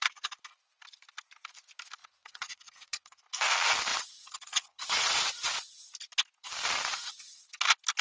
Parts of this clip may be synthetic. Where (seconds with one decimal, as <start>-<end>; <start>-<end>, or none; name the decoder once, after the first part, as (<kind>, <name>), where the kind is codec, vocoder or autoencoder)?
2.0-3.2 (vocoder, WaveNeXt); 3.9-5.8; 6.9-7.4